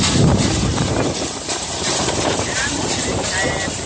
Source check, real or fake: fake